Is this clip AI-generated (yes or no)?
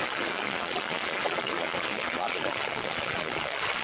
yes